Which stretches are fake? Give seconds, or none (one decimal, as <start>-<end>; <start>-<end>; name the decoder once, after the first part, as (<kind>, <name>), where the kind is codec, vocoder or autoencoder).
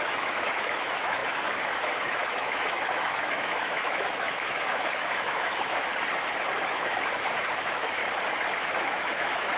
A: 0.0-5.9 (autoencoder, DAC-VAE); 6.7-8.0; 8.6-9.6